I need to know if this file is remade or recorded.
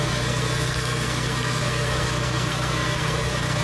remade